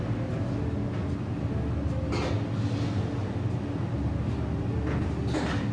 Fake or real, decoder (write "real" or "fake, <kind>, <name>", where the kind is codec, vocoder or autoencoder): real